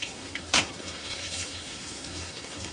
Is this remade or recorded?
remade